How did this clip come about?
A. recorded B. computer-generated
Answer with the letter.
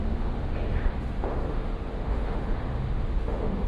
B